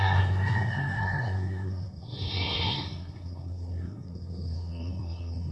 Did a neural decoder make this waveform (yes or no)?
yes